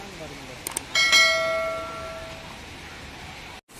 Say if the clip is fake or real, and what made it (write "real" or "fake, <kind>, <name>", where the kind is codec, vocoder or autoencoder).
real